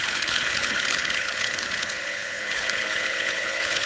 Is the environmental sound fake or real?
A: fake